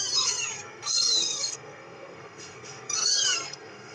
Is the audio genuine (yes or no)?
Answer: no